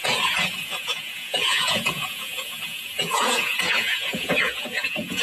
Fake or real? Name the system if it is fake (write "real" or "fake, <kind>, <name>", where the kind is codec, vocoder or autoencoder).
fake, vocoder, Vocos